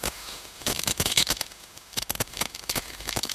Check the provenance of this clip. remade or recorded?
remade